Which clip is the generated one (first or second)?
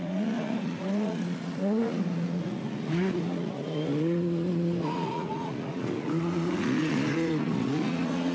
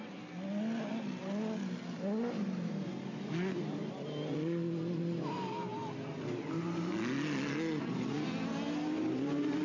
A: first